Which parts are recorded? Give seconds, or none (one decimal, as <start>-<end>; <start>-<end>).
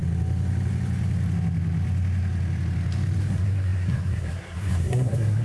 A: 0.0-3.2